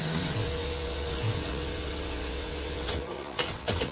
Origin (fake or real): fake